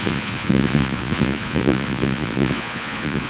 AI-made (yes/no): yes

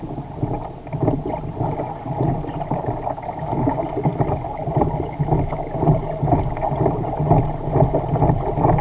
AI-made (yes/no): no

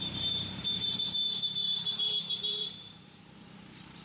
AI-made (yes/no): yes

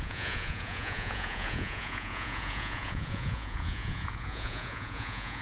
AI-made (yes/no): yes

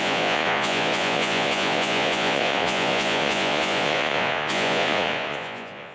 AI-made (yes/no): yes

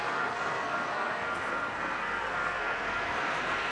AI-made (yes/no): yes